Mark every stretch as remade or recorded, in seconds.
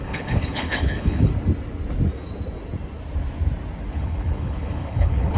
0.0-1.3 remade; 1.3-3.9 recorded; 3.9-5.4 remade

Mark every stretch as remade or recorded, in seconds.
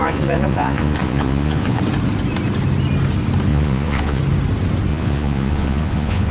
0.0-1.8 remade; 1.8-3.5 recorded; 3.5-4.2 remade; 4.2-4.9 recorded; 4.9-6.3 remade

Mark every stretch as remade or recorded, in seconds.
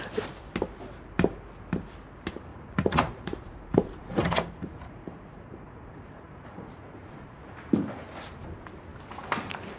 0.0-2.5 recorded; 2.5-7.4 remade; 7.4-9.8 recorded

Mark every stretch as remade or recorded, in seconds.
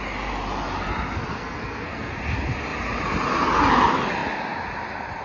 0.0-1.3 recorded; 1.3-2.1 remade; 2.1-5.2 recorded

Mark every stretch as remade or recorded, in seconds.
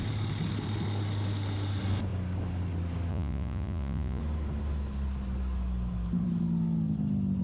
0.0-3.1 recorded; 3.1-4.2 remade; 4.2-7.4 recorded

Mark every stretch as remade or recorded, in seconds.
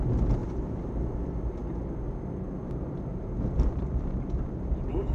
0.0-0.4 recorded; 0.4-1.0 remade; 1.0-3.1 recorded; 3.1-5.1 remade